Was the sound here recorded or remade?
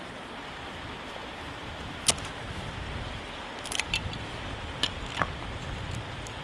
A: recorded